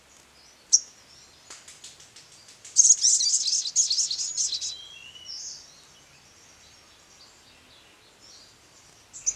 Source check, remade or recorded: recorded